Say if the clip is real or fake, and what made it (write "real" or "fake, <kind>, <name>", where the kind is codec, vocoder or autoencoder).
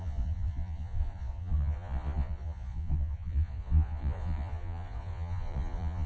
fake, vocoder, Vocos